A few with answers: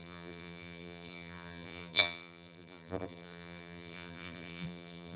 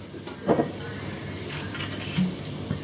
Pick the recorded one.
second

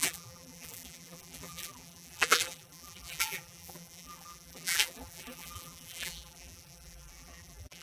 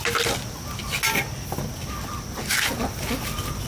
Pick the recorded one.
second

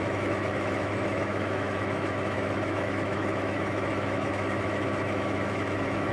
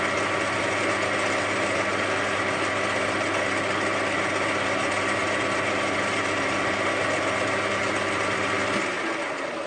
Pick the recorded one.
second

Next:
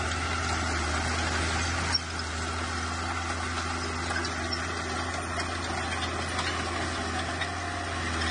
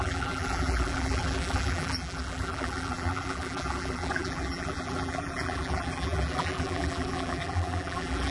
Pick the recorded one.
first